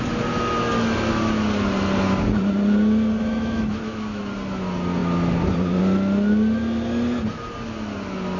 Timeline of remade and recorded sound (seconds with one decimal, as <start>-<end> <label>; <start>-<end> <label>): 0.0-3.3 recorded; 3.3-4.2 remade; 4.2-8.4 recorded